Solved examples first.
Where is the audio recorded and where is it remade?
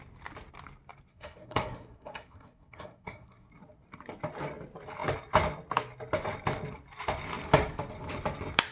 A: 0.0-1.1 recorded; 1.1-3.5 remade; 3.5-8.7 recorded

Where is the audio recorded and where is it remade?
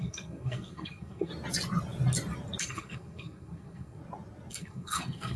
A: 0.0-1.3 remade; 1.3-2.6 recorded; 2.6-4.0 remade; 4.0-4.5 recorded; 4.5-5.4 remade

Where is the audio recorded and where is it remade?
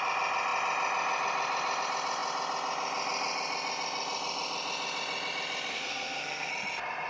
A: 0.0-5.7 recorded; 5.7-6.5 remade; 6.5-7.1 recorded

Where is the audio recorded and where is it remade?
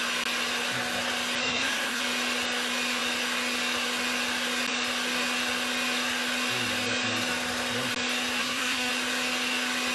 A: 0.0-1.4 recorded; 1.4-2.0 remade; 2.0-8.4 recorded; 8.4-8.9 remade; 8.9-9.9 recorded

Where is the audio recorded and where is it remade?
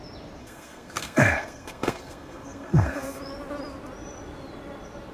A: 0.0-0.4 recorded; 0.4-3.2 remade; 3.2-5.1 recorded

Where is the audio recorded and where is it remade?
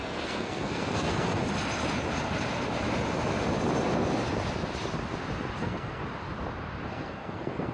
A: 0.0-1.4 remade; 1.4-5.6 recorded; 5.6-6.0 remade; 6.0-6.9 recorded; 6.9-7.7 remade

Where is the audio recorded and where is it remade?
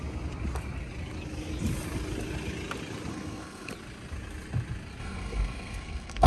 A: 0.0-3.1 recorded; 3.1-3.7 remade; 3.7-5.0 recorded; 5.0-6.3 remade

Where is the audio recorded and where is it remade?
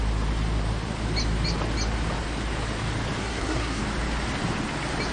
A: 0.0-3.2 recorded; 3.2-3.8 remade; 3.8-5.1 recorded